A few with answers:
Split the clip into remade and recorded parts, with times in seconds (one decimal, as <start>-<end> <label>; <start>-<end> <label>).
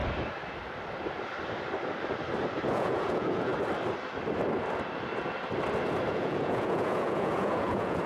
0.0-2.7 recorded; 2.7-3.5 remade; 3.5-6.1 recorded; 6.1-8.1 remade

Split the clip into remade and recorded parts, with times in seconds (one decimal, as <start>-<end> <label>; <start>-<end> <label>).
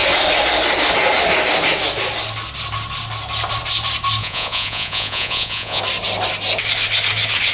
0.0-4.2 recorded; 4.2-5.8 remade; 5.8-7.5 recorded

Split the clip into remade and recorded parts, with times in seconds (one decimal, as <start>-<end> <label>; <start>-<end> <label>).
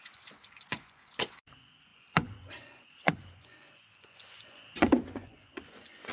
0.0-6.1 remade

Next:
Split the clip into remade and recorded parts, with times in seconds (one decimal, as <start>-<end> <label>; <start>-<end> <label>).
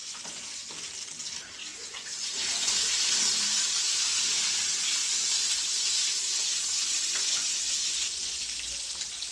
0.0-0.7 remade; 0.7-1.6 recorded; 1.6-3.0 remade; 3.0-5.0 recorded; 5.0-8.4 remade; 8.4-9.3 recorded